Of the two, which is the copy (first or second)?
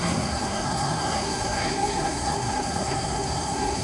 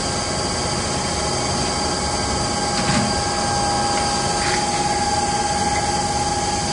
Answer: first